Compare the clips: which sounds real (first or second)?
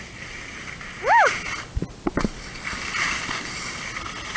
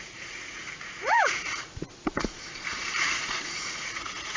first